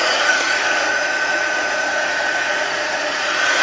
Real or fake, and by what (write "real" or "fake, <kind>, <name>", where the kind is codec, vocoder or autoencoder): fake, vocoder, Vocos